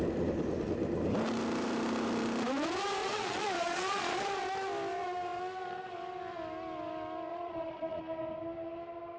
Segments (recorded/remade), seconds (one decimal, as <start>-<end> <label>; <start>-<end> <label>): 0.0-3.0 recorded; 3.0-4.4 remade; 4.4-7.3 recorded; 7.3-8.0 remade; 8.0-9.2 recorded